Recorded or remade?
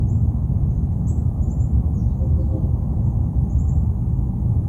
recorded